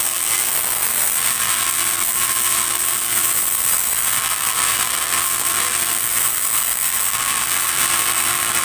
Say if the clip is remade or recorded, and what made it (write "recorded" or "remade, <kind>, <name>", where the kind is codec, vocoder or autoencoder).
remade, vocoder, BigVGAN v2